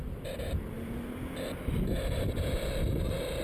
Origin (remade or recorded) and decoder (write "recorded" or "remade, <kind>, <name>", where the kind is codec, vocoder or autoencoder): remade, vocoder, BigVGAN v2